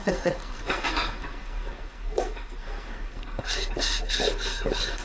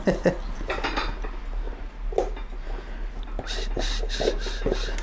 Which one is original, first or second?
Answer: second